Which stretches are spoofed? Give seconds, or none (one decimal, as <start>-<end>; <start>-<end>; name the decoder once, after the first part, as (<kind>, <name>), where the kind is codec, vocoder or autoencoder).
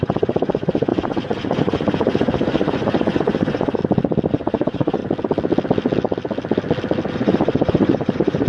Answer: 0.0-3.8 (vocoder, Vocos); 4.3-5.0; 7.1-8.5